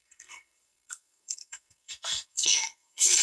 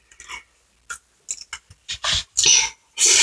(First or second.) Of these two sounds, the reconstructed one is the first